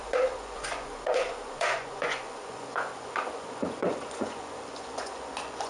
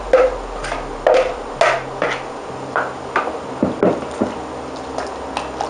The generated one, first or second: first